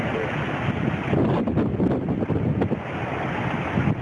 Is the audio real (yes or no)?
yes